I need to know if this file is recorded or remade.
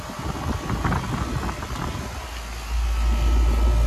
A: recorded